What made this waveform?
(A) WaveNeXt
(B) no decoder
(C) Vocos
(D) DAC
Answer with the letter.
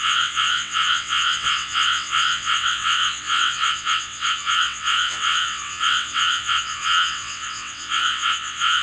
A